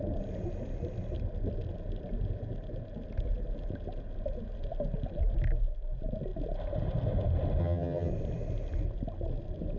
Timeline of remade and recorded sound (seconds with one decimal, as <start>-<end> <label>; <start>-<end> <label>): 0.0-7.6 recorded; 7.6-8.1 remade; 8.1-9.8 recorded